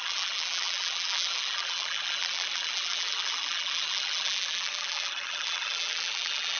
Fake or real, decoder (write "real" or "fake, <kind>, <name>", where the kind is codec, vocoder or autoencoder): fake, vocoder, BigVGAN v2